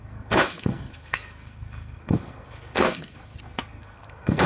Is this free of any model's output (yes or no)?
no